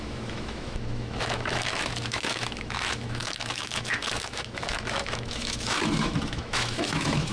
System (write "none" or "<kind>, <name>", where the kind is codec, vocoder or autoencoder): autoencoder, DAC-VAE